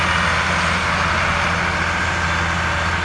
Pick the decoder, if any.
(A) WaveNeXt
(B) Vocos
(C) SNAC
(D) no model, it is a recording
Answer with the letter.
D